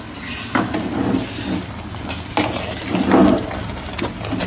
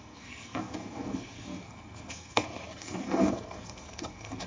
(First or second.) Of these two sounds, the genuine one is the first